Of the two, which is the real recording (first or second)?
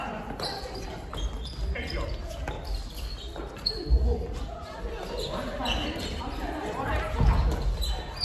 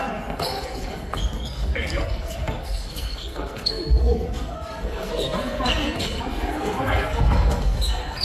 first